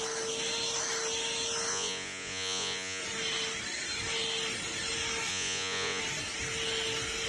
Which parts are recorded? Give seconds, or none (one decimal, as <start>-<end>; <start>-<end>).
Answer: 0.0-1.7; 3.0-5.3; 6.0-7.3

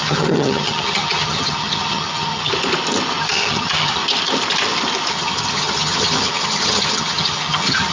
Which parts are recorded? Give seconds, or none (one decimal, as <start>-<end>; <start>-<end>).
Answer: 2.5-3.2; 4.0-5.1

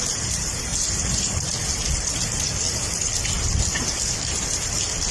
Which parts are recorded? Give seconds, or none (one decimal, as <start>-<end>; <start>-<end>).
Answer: 0.0-5.1

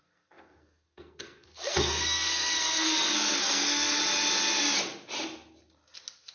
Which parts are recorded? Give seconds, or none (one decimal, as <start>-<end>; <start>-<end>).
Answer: 4.0-6.3

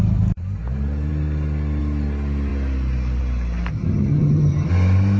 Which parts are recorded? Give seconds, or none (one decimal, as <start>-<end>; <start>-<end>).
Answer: 0.0-3.7; 4.7-5.2

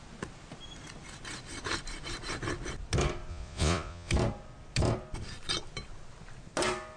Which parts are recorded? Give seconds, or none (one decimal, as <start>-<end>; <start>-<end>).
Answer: 0.0-3.3; 4.1-7.0

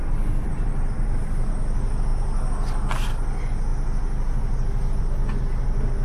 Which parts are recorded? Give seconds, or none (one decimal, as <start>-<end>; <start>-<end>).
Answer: 1.6-6.0

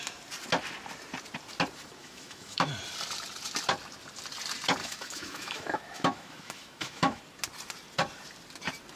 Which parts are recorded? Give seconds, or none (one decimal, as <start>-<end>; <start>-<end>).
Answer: 0.0-2.0; 2.7-4.8; 7.2-9.0